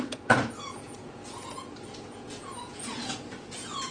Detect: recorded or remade remade